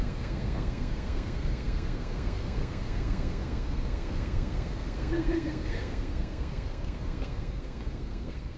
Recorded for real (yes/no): no